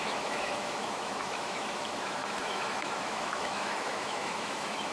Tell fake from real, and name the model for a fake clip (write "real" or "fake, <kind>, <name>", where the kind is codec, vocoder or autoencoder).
fake, autoencoder, DAC-VAE